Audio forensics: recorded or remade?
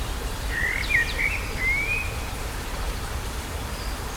remade